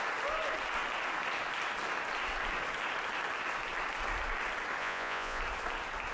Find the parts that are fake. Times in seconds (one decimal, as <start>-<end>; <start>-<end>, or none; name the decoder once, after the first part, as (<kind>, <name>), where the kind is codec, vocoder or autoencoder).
4.8-5.4 (vocoder, Vocos)